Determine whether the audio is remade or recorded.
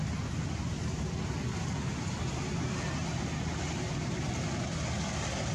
recorded